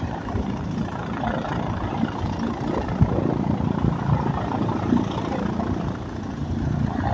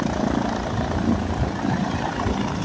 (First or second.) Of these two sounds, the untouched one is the second